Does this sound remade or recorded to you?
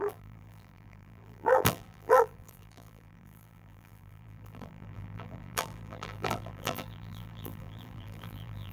remade